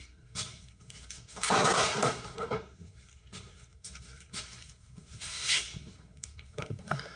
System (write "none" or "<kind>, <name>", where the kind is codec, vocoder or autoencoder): codec, SNAC